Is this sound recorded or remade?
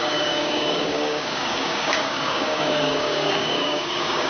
remade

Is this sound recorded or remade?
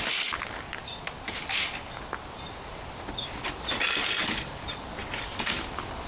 recorded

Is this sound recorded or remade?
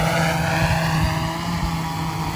recorded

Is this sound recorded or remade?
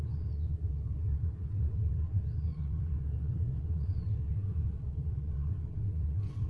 remade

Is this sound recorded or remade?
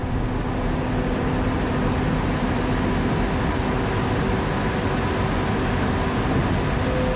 recorded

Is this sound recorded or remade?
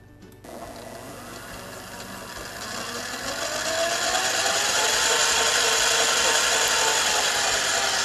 recorded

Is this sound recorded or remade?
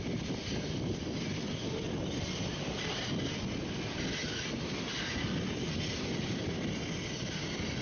recorded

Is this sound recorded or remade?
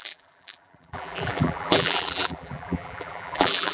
remade